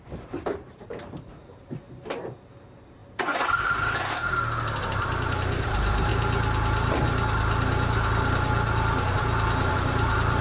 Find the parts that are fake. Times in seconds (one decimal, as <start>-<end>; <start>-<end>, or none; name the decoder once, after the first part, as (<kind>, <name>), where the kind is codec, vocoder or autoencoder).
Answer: 0.0-3.0 (vocoder, BigVGAN v2); 4.8-6.1; 9.7-10.4